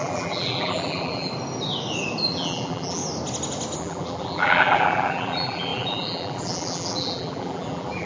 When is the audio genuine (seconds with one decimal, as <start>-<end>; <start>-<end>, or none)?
1.3-2.3; 3.0-3.8